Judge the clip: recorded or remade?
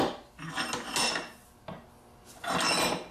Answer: recorded